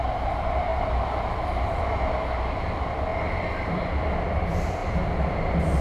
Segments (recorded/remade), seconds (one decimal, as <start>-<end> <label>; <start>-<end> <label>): 0.0-4.8 recorded; 4.8-5.8 remade